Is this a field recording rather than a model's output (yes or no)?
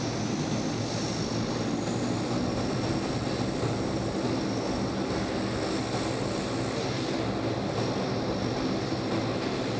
yes